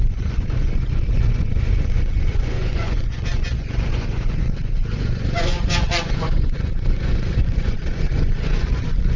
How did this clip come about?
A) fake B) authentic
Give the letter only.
A